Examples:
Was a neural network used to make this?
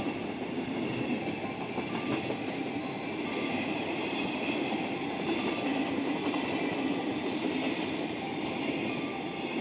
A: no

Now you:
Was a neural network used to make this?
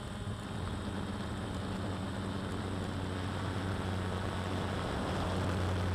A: no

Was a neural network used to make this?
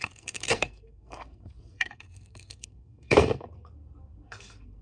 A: yes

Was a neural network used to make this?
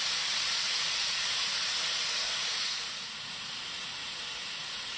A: yes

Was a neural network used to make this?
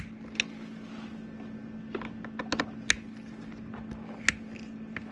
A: no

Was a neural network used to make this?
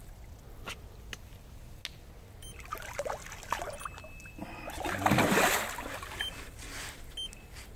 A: no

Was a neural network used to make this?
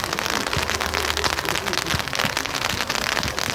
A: no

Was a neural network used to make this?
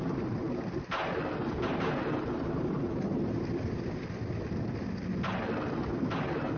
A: no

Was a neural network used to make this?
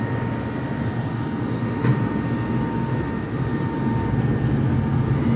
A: no